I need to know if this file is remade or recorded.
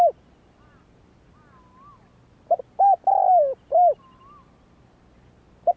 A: recorded